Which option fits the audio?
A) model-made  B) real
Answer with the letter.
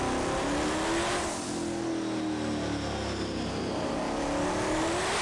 B